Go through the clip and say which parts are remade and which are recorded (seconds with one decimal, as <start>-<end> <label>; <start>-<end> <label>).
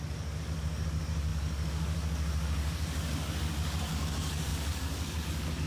0.0-5.7 remade